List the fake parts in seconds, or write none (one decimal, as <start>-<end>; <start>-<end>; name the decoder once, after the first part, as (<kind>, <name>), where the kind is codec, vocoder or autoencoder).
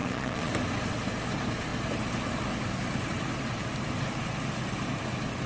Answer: 0.0-0.5 (vocoder, Vocos)